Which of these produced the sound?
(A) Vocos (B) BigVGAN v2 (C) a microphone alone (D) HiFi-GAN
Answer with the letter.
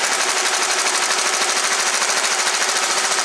B